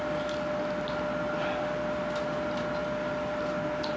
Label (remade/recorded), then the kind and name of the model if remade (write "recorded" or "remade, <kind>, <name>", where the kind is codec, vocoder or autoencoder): recorded